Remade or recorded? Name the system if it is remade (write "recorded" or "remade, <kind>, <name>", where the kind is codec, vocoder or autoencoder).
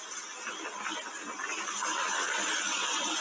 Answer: recorded